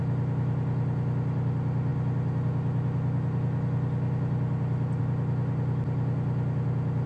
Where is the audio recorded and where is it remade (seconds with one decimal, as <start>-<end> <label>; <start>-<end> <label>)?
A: 0.0-7.1 recorded